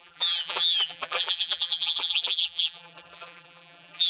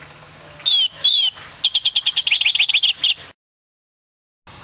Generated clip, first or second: first